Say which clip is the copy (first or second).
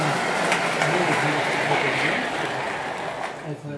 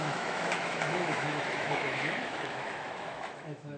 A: second